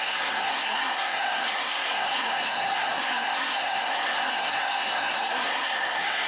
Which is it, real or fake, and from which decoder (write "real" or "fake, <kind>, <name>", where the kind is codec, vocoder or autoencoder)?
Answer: fake, codec, SNAC